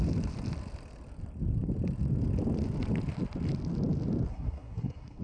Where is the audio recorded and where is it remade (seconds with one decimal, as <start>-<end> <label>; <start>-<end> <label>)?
0.0-4.3 recorded; 4.3-5.2 remade